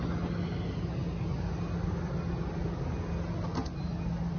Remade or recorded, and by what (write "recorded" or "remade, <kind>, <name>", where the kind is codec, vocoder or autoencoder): recorded